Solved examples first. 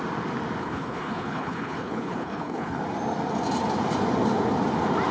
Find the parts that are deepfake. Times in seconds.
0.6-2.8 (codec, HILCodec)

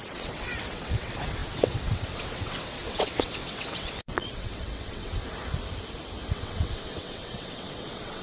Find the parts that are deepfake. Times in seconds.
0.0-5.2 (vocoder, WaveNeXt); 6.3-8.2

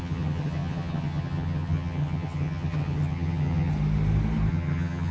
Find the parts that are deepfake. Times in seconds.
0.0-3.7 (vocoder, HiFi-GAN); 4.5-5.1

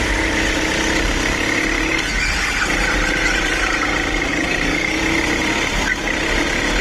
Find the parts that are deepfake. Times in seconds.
4.3-5.0 (codec, DAC)